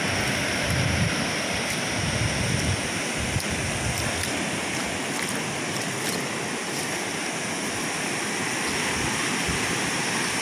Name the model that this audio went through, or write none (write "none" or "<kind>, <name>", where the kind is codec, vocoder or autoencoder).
none